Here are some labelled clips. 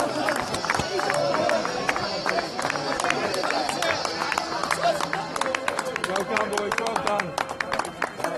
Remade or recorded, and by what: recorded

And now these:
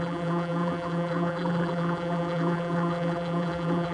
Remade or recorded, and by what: remade, vocoder, BigVGAN v2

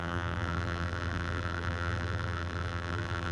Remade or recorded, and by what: remade, vocoder, BigVGAN v2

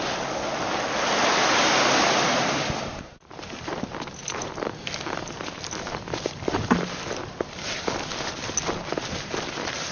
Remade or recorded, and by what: recorded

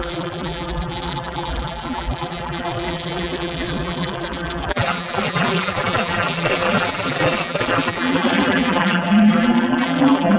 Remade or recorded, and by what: remade, vocoder, BigVGAN v2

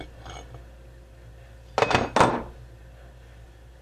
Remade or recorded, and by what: recorded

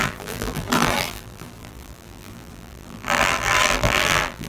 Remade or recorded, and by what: remade, vocoder, BigVGAN v2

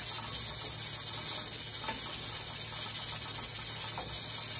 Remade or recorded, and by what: recorded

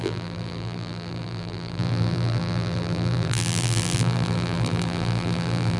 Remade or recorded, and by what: remade, vocoder, BigVGAN v2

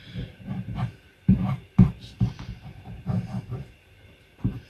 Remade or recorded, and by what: remade, vocoder, BigVGAN v2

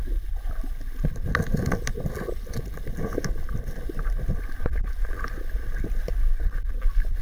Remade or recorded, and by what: recorded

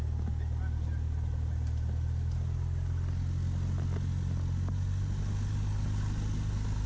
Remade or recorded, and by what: recorded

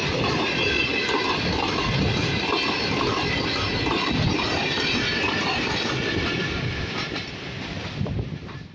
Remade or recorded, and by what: recorded